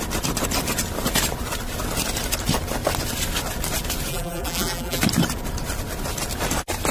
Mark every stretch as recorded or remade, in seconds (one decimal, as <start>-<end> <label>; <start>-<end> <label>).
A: 0.0-4.1 recorded; 4.1-5.0 remade; 5.0-6.9 recorded